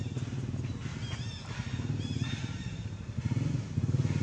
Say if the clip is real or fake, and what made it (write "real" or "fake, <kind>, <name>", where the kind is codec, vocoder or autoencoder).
real